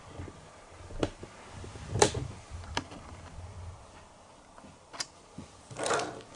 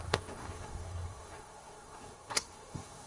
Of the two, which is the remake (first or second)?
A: second